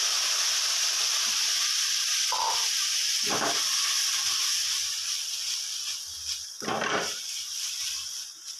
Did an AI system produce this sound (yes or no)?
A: yes